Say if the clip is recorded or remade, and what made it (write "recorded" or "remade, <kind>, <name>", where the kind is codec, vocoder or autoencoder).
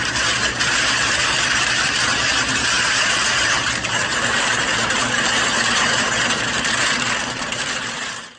remade, vocoder, BigVGAN v2